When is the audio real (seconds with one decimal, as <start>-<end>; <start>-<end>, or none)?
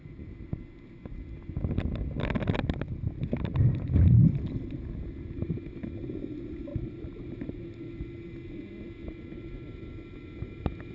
0.6-6.7; 7.6-10.9